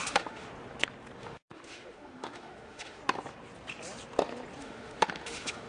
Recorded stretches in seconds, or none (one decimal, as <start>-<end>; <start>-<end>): 0.5-1.2; 3.0-4.6